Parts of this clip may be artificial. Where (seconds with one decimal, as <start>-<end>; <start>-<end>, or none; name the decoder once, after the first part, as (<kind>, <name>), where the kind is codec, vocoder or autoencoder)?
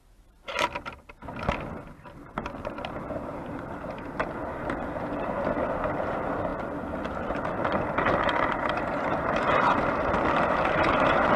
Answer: none